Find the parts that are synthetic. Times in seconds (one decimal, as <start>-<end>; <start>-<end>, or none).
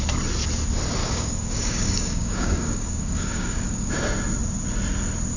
1.0-3.9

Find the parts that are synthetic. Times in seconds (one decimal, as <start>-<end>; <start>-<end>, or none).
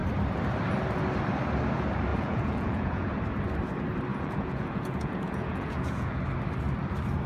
2.1-3.1; 4.1-6.2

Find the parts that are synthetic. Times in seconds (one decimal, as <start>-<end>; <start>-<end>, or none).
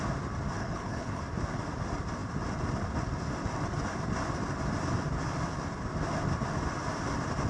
0.6-1.2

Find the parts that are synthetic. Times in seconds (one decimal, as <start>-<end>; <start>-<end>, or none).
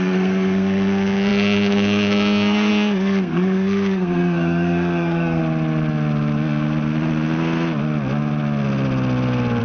0.0-5.4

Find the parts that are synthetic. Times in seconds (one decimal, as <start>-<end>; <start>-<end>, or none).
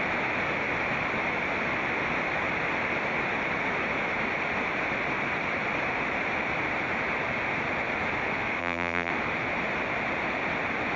8.6-9.1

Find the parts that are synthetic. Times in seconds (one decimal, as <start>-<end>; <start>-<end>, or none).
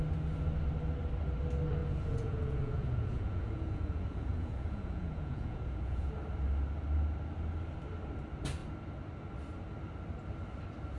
1.8-6.1